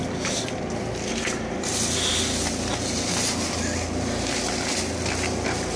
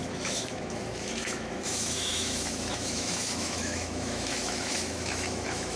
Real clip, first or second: first